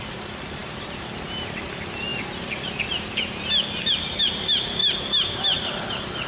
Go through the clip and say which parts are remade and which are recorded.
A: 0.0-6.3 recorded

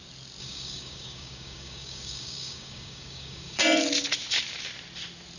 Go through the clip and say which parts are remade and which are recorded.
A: 0.0-0.4 recorded; 0.4-3.6 remade; 3.6-5.4 recorded